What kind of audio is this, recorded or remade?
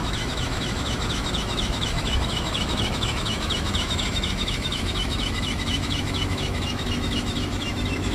remade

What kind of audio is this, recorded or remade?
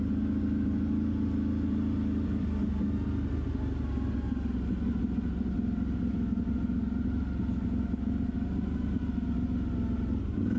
recorded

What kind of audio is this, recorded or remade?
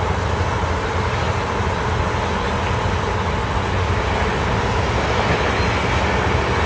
recorded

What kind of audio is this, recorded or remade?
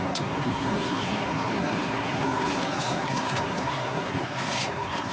remade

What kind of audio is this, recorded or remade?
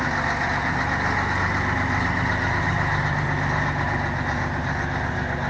recorded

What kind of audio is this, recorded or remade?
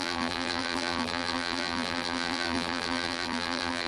remade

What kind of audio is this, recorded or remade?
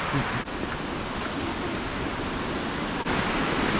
recorded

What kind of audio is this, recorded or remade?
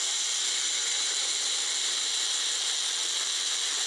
recorded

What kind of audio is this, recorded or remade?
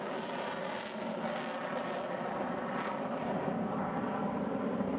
recorded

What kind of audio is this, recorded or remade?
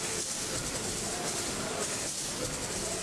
remade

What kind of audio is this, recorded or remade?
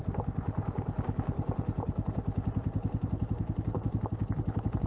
recorded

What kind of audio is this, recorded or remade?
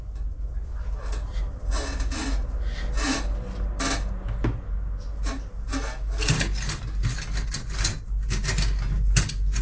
recorded